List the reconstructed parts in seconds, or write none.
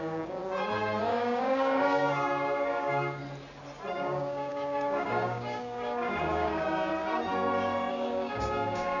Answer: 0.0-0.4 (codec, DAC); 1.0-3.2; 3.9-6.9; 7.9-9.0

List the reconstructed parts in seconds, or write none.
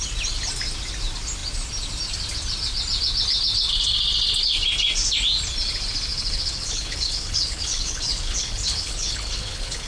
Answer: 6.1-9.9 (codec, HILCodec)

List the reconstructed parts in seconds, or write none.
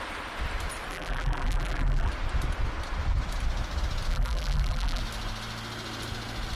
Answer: 0.9-2.1 (vocoder, BigVGAN v2); 4.1-5.0